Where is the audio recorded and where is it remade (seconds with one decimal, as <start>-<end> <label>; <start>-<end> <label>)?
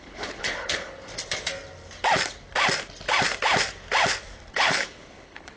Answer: 0.0-1.1 remade; 1.1-4.5 recorded; 4.5-5.6 remade